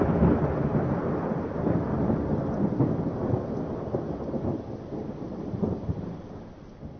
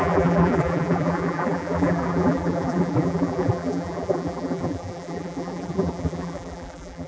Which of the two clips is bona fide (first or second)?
first